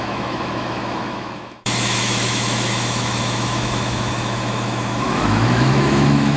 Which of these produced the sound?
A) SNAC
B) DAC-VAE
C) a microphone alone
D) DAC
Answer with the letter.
B